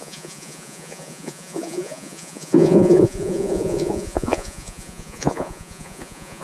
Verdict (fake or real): fake